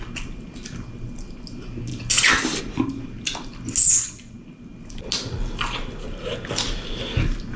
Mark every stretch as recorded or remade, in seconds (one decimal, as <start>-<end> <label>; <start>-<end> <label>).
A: 0.0-7.6 recorded